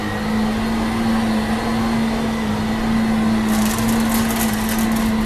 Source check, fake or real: real